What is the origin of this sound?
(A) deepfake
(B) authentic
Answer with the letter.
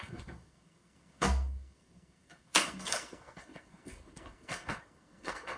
A